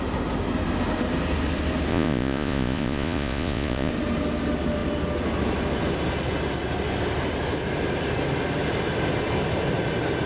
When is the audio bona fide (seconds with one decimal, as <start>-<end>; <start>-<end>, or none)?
0.0-1.9; 3.9-10.3